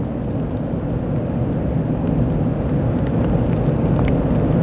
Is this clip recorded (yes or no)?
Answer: yes